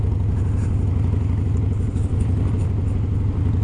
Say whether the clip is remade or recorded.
recorded